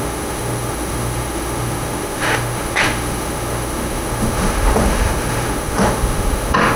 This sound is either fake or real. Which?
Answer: fake